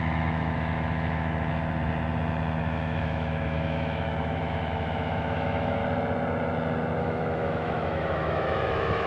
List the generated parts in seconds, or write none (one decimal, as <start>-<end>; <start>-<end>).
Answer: 0.0-1.5; 2.6-5.8; 7.0-9.1